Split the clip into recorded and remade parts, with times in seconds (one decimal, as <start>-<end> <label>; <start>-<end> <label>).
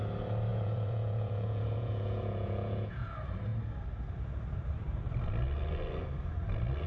0.0-0.5 recorded; 0.5-3.1 remade; 3.1-6.9 recorded